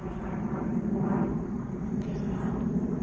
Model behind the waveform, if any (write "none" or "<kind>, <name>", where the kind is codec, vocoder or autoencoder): none